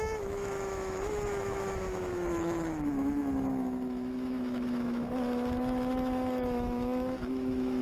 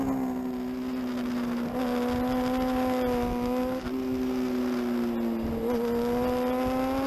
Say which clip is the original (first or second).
second